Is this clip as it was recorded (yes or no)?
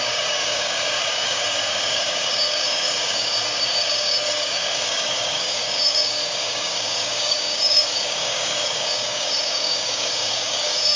no